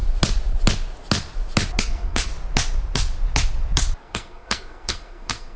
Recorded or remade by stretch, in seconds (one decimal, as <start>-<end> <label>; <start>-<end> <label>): 0.0-1.8 recorded; 1.8-2.3 remade; 2.3-4.0 recorded; 4.0-5.6 remade